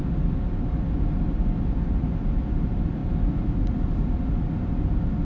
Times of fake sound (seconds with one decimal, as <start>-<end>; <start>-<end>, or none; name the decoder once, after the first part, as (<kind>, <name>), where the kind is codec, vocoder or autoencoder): none

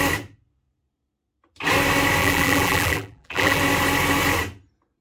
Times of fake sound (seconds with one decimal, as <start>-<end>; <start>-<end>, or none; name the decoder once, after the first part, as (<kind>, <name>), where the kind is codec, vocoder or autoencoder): 2.2-3.6 (vocoder, BigVGAN v2)

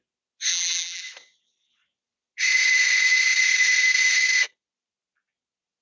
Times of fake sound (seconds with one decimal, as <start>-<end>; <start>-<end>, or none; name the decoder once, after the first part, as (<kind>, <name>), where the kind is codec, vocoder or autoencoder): 0.5-1.0 (vocoder, BigVGAN v2)

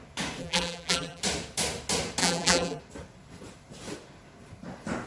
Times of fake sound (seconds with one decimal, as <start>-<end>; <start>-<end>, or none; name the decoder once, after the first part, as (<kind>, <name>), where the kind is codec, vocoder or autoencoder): 0.4-1.2 (vocoder, BigVGAN v2); 2.2-2.8

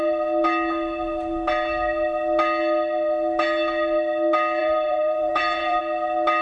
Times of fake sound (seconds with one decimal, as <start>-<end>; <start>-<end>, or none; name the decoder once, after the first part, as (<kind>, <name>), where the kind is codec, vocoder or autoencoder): 4.6-5.8 (vocoder, BigVGAN v2)